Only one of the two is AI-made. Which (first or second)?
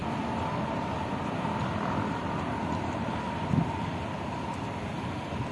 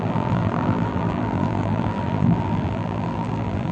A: second